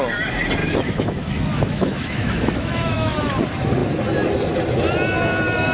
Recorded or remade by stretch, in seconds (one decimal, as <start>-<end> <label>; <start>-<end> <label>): 0.0-0.6 recorded; 0.6-3.3 remade; 3.3-5.7 recorded